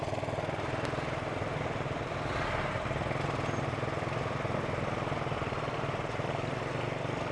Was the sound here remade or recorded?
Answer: recorded